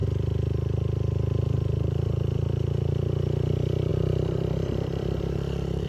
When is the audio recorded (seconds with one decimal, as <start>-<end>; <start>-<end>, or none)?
0.0-3.9